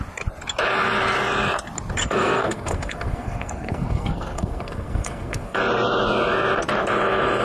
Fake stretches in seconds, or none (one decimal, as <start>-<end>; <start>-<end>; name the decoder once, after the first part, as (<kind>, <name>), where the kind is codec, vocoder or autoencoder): 2.0-5.6 (codec, SNAC)